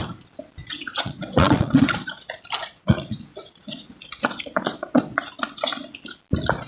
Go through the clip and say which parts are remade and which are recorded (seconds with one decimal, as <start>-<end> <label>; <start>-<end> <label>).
0.0-0.6 recorded; 0.6-2.2 remade; 2.2-2.6 recorded; 2.6-5.2 remade; 5.2-6.7 recorded